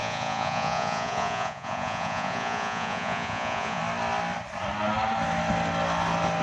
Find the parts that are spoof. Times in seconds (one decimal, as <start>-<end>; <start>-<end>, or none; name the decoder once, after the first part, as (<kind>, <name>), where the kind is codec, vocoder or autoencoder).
0.0-3.8 (vocoder, Vocos)